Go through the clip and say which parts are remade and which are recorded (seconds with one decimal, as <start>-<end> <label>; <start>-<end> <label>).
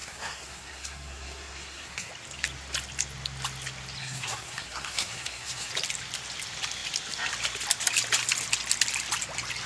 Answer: 0.0-2.1 remade; 2.1-4.0 recorded; 4.0-5.7 remade; 5.7-9.7 recorded